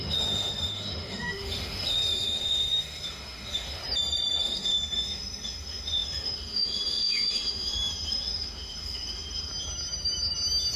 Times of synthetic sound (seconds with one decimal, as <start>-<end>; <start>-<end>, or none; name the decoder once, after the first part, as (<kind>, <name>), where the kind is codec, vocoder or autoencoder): 0.0-3.8 (autoencoder, DAC-VAE); 4.4-9.5